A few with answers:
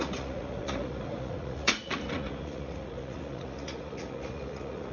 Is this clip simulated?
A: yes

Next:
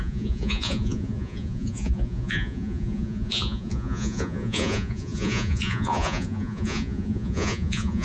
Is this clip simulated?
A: yes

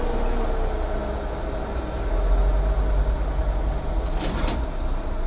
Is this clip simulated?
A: no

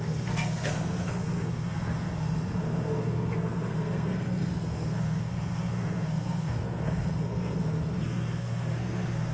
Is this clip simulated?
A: yes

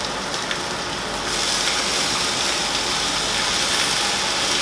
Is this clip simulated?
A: no